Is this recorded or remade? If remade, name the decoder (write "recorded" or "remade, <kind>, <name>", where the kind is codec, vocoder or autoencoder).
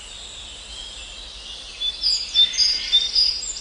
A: recorded